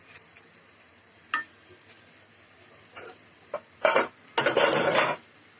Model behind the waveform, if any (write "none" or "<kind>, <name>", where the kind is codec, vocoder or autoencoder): none